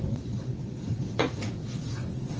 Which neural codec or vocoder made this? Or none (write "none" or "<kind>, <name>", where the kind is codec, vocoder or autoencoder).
vocoder, Vocos